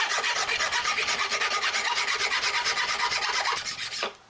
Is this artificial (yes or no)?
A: no